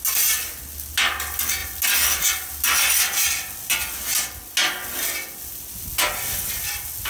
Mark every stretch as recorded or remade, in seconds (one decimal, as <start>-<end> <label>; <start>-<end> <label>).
0.0-7.1 recorded